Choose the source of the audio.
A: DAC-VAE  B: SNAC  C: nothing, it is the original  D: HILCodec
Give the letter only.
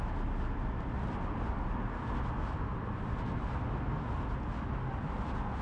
C